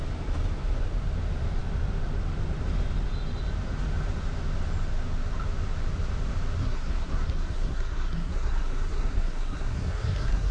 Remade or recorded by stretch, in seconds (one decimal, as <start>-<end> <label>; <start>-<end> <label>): 0.0-6.6 recorded; 6.6-10.5 remade

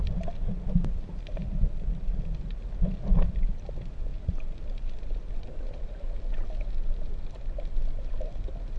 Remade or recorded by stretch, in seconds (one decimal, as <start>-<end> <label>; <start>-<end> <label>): 0.0-0.8 recorded; 0.8-1.3 remade; 1.3-4.1 recorded; 4.1-4.6 remade; 4.6-8.8 recorded

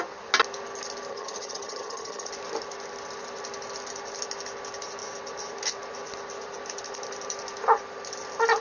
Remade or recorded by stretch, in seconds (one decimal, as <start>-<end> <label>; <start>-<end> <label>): 0.0-1.1 recorded; 1.1-2.3 remade; 2.3-8.6 recorded

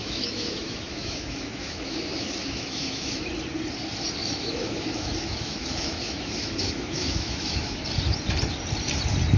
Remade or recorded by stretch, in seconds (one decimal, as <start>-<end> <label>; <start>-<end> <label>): 0.0-3.2 remade; 3.2-4.2 recorded; 4.2-7.8 remade; 7.8-9.4 recorded

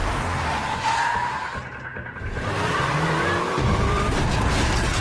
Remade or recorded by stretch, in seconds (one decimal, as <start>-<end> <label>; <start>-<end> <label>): 0.0-1.9 recorded; 1.9-5.0 remade

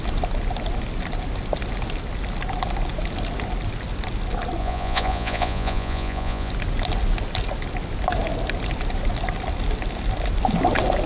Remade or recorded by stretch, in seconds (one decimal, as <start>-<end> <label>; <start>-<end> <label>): 0.0-4.6 recorded; 4.6-6.5 remade; 6.5-11.1 recorded

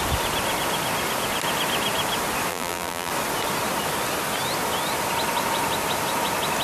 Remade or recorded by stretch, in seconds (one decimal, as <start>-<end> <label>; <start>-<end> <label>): 0.0-2.5 recorded; 2.5-3.1 remade; 3.1-6.6 recorded